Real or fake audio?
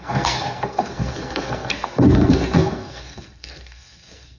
fake